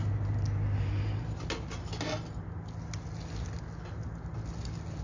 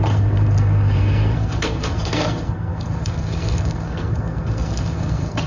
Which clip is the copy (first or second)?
second